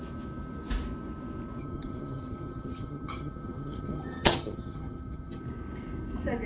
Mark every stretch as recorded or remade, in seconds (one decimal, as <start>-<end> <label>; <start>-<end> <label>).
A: 0.0-1.6 recorded; 1.6-5.4 remade; 5.4-6.5 recorded